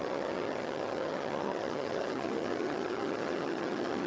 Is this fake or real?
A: fake